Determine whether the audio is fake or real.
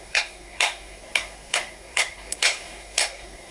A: fake